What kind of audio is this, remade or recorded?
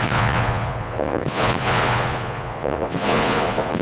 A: remade